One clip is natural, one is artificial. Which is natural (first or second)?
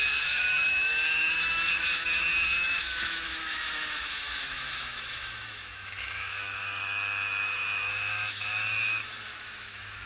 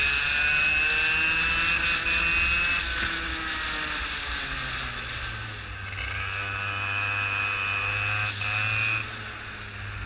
second